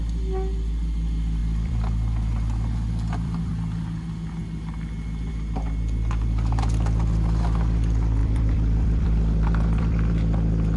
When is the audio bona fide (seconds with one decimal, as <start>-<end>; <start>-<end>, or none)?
0.0-1.4; 3.5-8.2